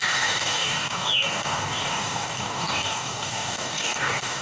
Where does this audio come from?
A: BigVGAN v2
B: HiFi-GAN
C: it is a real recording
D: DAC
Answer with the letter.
D